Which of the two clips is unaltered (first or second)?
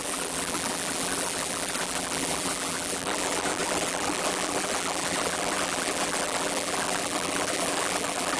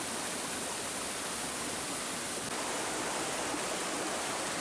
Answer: second